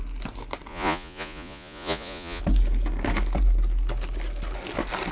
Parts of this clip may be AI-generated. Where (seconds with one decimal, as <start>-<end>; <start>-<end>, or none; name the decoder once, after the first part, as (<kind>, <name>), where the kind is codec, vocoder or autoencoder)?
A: 0.7-2.4 (vocoder, Vocos)